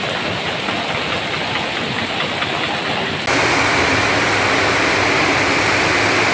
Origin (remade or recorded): recorded